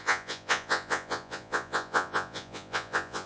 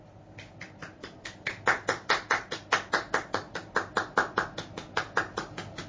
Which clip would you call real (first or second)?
second